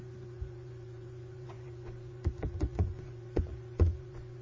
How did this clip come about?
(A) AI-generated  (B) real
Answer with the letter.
A